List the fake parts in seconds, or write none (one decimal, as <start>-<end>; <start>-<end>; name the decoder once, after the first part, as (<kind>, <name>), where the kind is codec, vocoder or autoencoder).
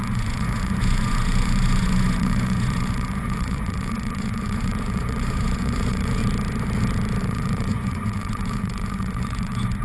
0.0-6.2 (vocoder, Vocos); 7.2-9.8